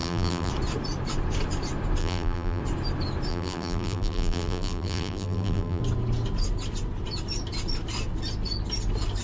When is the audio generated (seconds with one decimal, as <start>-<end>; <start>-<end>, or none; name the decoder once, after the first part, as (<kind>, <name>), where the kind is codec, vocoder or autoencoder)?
0.0-0.5 (vocoder, BigVGAN v2); 2.0-2.6; 3.3-5.8